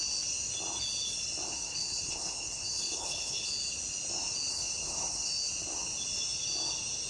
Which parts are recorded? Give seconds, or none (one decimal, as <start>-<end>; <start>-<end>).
0.0-1.5; 3.5-4.5; 5.3-7.1